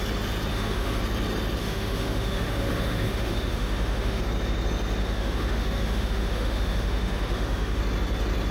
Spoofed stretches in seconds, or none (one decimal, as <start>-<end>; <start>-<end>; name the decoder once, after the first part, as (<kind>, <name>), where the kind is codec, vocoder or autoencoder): 0.5-1.0 (autoencoder, DAC-VAE); 1.6-4.2; 5.0-7.8